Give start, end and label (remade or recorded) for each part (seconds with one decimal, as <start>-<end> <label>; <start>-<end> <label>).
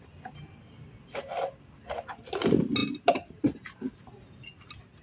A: 0.0-5.0 recorded